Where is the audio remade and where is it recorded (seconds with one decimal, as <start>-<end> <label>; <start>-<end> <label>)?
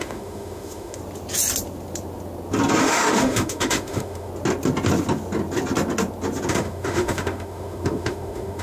0.0-1.0 remade; 1.0-2.8 recorded; 2.8-4.3 remade; 4.3-6.5 recorded; 6.5-8.6 remade